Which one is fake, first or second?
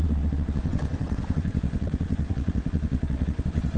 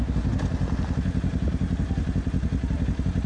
first